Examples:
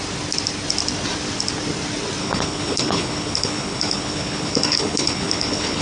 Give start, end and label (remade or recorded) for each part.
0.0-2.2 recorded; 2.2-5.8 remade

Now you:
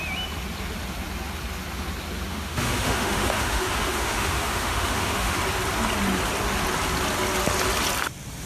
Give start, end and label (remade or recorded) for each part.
0.0-2.3 recorded; 2.3-5.4 remade; 5.4-8.5 recorded

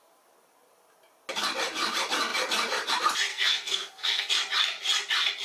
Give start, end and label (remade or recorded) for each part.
0.0-3.3 recorded; 3.3-4.3 remade; 4.3-5.4 recorded

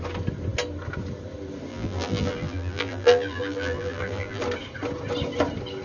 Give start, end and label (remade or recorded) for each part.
0.0-1.7 recorded; 1.7-4.4 remade; 4.4-5.8 recorded

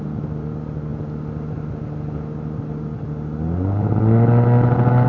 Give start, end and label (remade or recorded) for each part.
0.0-5.1 recorded

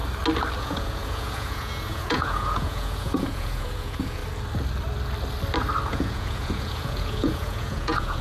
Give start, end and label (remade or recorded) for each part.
0.0-0.6 recorded; 0.6-4.2 remade; 4.2-5.9 recorded; 5.9-8.2 remade

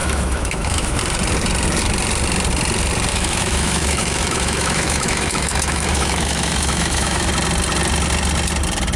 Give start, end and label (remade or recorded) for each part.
0.0-1.0 remade; 1.0-3.1 recorded; 3.1-7.3 remade; 7.3-9.0 recorded

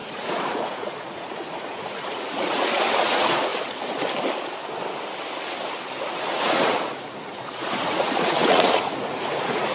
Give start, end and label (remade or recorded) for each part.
0.0-3.5 remade; 3.5-6.0 recorded; 6.0-9.7 remade